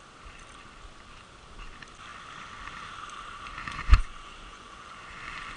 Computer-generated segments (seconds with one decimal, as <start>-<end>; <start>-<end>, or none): 3.7-5.6